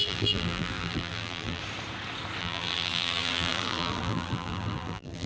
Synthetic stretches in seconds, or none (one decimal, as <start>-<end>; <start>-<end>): 0.0-1.6; 2.4-5.3